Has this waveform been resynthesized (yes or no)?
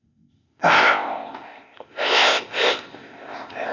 yes